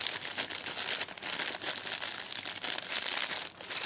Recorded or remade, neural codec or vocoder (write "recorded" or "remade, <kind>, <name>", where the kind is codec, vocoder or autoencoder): recorded